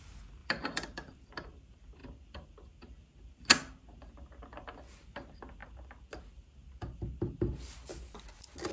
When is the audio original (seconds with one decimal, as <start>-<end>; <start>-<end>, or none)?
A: 0.0-0.4; 1.3-8.7